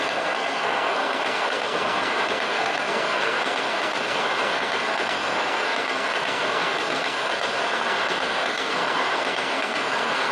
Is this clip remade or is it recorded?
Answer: remade